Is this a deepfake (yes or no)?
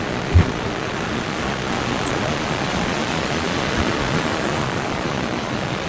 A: yes